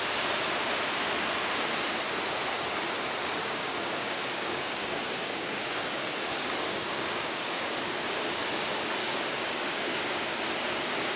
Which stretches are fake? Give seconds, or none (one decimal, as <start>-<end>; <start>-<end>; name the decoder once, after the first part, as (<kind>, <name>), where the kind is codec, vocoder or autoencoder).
3.4-7.9 (codec, DAC); 9.0-10.0